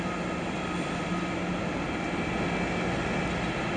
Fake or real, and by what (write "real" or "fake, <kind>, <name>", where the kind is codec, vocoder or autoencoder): real